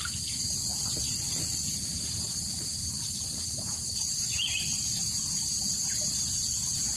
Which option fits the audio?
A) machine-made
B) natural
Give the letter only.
A